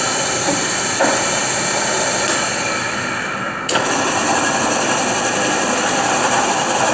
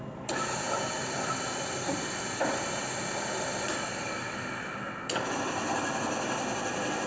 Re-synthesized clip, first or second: first